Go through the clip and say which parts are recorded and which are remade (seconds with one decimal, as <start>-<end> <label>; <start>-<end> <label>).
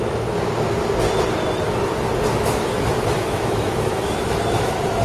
0.0-2.3 recorded; 2.3-5.0 remade